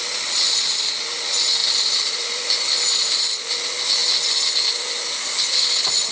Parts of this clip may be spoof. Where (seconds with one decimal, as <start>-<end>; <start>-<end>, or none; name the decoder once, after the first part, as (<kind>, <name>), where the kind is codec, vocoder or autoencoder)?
1.6-3.2 (vocoder, BigVGAN v2)